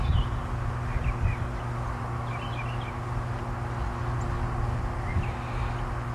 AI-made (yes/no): no